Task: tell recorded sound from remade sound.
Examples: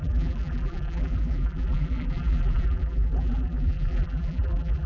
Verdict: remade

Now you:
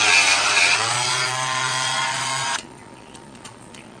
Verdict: remade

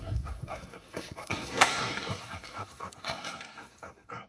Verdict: remade